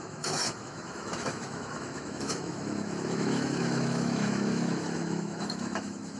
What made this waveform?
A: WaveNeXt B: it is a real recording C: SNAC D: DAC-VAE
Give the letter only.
D